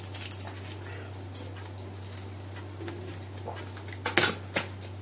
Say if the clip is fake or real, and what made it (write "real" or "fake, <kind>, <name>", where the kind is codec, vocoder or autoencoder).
real